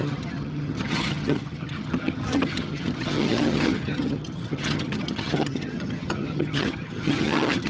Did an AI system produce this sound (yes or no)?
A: yes